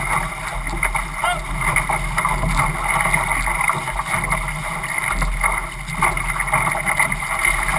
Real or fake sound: real